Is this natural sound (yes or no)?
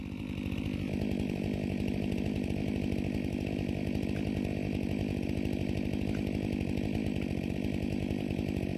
no